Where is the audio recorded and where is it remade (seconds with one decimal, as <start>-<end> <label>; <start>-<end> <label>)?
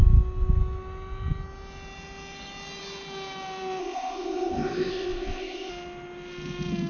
0.0-3.8 recorded; 3.8-5.7 remade; 5.7-6.9 recorded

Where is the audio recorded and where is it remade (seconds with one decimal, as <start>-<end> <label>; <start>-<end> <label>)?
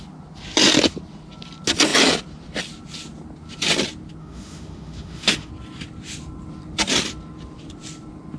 0.0-4.2 recorded; 4.2-5.5 remade; 5.5-8.4 recorded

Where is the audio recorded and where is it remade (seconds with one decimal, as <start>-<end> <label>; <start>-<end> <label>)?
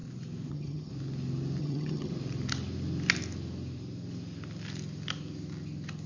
0.0-0.5 recorded; 0.5-0.9 remade; 0.9-1.6 recorded; 1.6-2.1 remade; 2.1-6.1 recorded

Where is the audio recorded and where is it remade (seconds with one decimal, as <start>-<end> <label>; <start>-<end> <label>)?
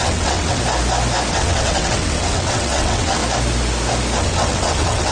0.0-0.6 remade; 0.6-1.3 recorded; 1.3-3.2 remade; 3.2-4.2 recorded; 4.2-5.1 remade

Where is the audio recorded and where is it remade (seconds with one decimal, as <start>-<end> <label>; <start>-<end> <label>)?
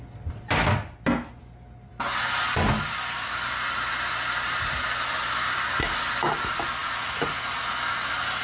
0.0-6.8 recorded; 6.8-7.4 remade; 7.4-8.4 recorded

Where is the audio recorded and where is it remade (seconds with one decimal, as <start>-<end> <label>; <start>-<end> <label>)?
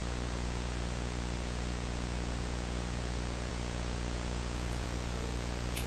0.0-5.9 remade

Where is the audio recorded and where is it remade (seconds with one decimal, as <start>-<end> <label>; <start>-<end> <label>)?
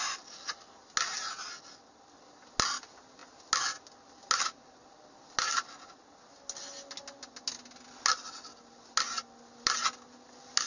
0.0-10.7 recorded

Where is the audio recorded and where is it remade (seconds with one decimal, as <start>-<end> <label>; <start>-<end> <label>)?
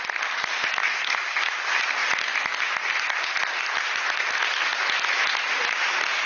0.0-0.8 recorded; 0.8-1.6 remade; 1.6-6.3 recorded